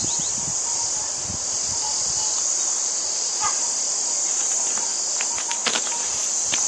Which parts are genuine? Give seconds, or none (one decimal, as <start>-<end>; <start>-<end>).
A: 0.5-2.2; 3.4-4.3; 4.9-5.8